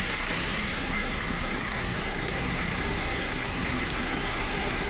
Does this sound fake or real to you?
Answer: fake